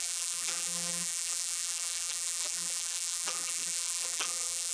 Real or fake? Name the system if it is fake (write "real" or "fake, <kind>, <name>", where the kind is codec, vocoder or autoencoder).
fake, vocoder, BigVGAN v2